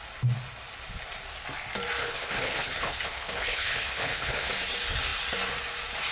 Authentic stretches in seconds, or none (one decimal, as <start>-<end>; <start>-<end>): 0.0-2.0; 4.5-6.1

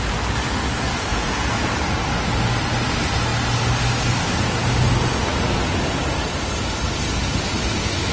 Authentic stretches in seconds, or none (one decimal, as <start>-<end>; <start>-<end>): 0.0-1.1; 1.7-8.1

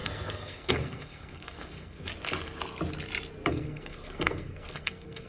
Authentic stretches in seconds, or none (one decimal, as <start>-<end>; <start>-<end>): 2.1-3.5